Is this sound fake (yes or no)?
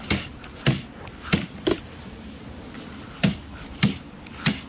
no